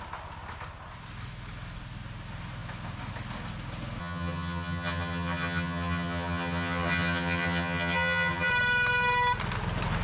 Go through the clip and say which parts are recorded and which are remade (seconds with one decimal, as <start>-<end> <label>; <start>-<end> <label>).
0.0-4.0 recorded; 4.0-8.5 remade; 8.5-10.0 recorded